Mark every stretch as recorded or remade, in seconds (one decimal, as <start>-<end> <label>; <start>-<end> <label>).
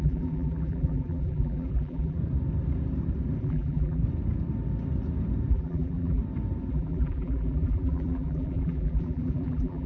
0.0-2.2 remade; 2.2-3.4 recorded; 3.4-4.0 remade; 4.0-5.5 recorded; 5.5-6.2 remade; 6.2-6.7 recorded; 6.7-9.9 remade